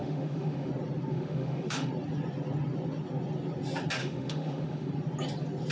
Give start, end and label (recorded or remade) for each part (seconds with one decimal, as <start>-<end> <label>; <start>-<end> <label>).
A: 0.0-0.7 remade; 0.7-1.1 recorded; 1.1-1.9 remade; 1.9-4.0 recorded; 4.0-4.9 remade; 4.9-5.7 recorded